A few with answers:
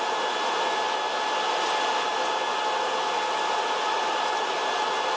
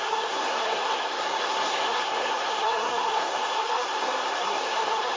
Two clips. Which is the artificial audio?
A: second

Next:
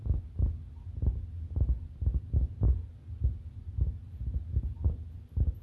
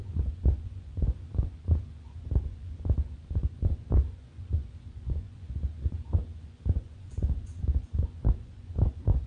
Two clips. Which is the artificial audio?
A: second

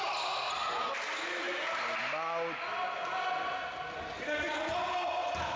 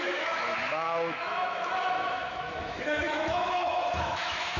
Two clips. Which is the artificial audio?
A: second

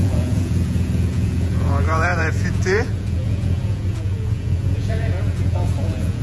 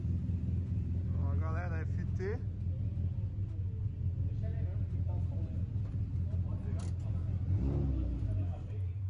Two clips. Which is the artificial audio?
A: first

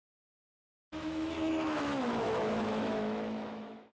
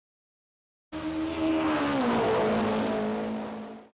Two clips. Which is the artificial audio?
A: first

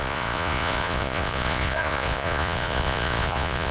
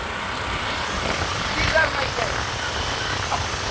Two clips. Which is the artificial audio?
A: first